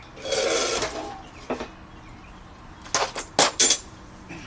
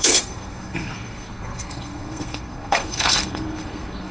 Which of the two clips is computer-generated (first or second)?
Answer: second